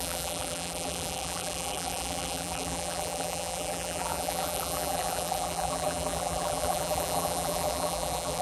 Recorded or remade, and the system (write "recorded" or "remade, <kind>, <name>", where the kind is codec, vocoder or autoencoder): remade, vocoder, BigVGAN v2